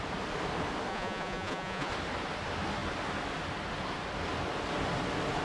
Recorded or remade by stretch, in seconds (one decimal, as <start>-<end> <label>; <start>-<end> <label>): 0.0-0.9 recorded; 0.9-1.9 remade; 1.9-5.4 recorded

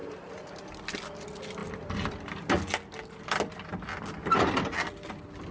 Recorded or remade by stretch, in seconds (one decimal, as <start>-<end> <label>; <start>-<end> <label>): 0.0-5.5 recorded

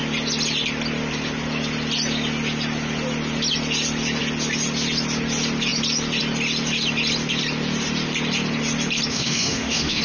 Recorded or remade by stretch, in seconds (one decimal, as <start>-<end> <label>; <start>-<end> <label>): 0.0-9.1 recorded; 9.1-10.0 remade

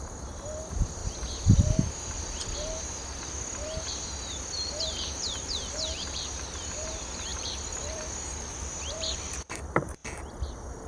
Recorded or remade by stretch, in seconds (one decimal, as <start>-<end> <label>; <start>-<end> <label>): 0.0-1.0 remade; 1.0-4.8 recorded; 4.8-10.0 remade; 10.0-10.9 recorded

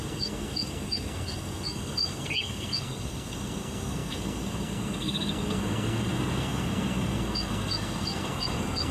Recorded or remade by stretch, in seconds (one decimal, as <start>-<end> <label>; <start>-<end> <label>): 0.0-8.9 remade

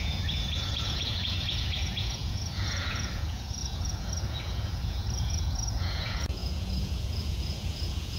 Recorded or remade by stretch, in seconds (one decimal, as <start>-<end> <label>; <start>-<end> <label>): 0.0-8.2 remade